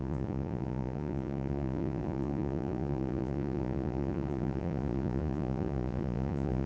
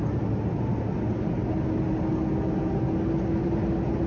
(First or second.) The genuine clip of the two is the second